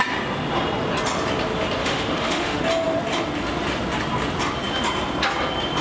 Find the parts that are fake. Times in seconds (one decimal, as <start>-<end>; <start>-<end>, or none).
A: 1.8-2.6